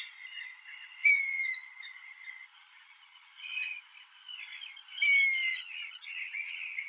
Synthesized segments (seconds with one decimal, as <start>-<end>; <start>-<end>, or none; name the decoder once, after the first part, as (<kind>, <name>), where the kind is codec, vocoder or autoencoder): 1.0-3.8 (vocoder, Vocos); 5.5-6.9